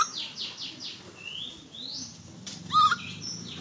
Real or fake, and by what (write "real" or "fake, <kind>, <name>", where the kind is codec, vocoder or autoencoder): real